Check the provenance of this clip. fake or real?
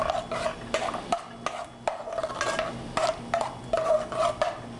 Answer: real